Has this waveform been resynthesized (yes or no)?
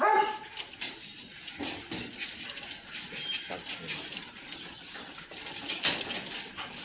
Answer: no